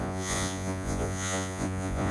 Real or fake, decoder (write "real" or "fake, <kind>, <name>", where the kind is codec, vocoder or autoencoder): fake, vocoder, Vocos